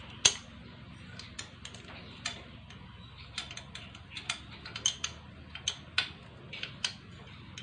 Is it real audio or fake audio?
real